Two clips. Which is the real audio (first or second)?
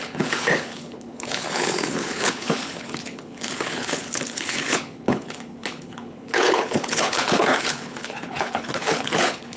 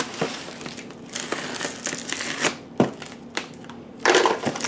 second